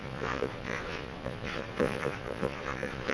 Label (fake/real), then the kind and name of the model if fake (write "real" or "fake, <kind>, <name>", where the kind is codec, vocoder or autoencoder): fake, vocoder, Vocos